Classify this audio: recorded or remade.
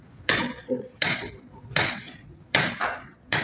remade